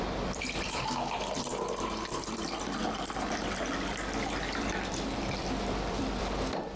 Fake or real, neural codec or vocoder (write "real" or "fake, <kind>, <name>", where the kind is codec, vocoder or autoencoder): fake, vocoder, BigVGAN v2